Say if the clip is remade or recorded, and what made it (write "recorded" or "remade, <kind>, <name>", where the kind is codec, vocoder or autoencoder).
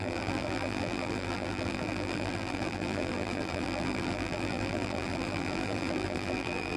remade, vocoder, BigVGAN v2